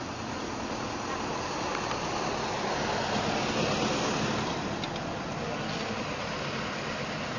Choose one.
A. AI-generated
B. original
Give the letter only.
B